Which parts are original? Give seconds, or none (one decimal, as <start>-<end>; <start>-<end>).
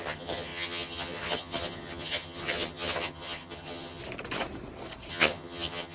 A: 4.0-5.1